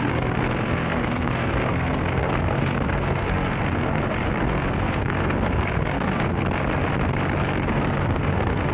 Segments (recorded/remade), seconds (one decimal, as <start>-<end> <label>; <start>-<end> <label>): 0.0-6.4 remade; 6.4-7.7 recorded; 7.7-8.7 remade